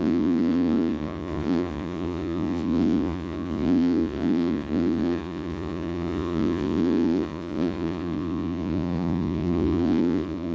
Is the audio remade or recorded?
remade